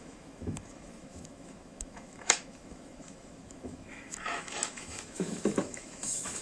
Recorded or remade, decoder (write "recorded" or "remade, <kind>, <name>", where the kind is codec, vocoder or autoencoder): remade, autoencoder, DAC-VAE